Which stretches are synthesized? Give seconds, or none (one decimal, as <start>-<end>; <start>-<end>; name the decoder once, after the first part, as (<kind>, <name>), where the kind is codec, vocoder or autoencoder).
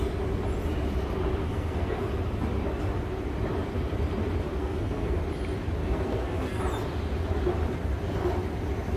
1.4-2.1 (codec, SNAC); 4.6-5.2; 5.8-6.6